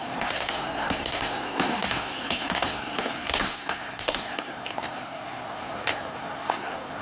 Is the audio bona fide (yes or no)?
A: no